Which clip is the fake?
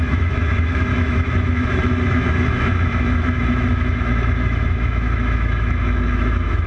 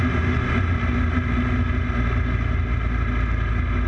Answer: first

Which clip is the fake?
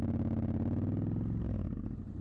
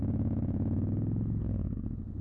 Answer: second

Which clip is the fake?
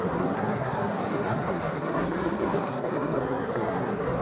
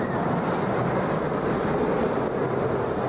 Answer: first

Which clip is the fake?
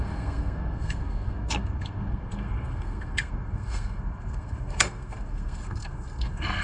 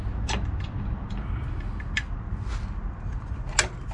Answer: first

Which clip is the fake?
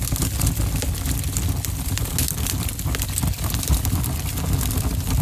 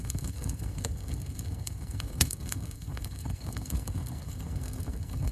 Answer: second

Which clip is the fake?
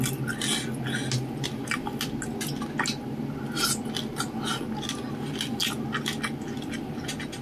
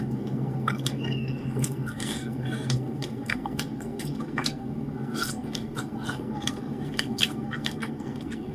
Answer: second